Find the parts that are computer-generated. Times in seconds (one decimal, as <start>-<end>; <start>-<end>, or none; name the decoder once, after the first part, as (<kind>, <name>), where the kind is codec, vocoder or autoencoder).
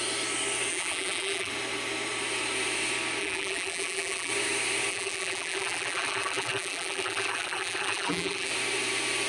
0.7-1.5 (vocoder, BigVGAN v2); 3.2-4.3; 4.9-8.5